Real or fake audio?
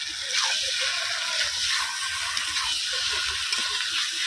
real